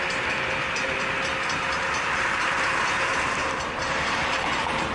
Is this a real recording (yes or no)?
no